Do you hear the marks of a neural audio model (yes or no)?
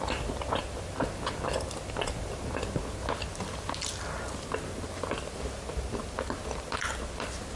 no